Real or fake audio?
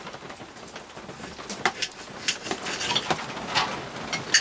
real